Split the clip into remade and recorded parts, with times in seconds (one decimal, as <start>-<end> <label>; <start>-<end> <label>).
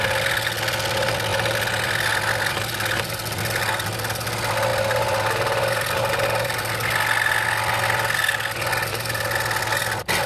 0.0-10.3 recorded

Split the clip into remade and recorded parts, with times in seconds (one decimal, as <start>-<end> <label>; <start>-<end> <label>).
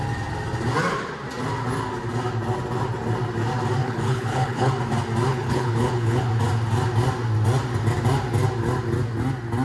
0.0-3.8 recorded; 3.8-4.7 remade; 4.7-5.3 recorded; 5.3-6.3 remade; 6.3-9.6 recorded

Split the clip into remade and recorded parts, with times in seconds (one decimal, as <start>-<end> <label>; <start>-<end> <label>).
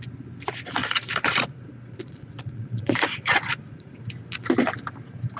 0.0-0.8 recorded; 0.8-4.0 remade; 4.0-5.4 recorded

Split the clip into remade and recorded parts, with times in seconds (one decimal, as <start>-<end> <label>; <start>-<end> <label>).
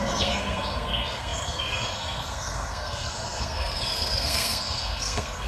0.0-5.5 remade